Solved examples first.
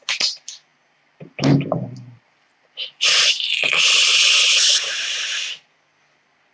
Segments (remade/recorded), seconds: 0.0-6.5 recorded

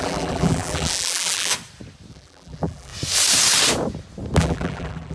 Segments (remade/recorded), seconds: 0.0-1.5 remade; 1.5-2.1 recorded; 2.1-2.9 remade; 2.9-4.4 recorded; 4.4-5.1 remade